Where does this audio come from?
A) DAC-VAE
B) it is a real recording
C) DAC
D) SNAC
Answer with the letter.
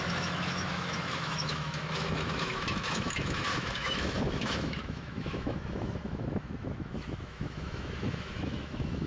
A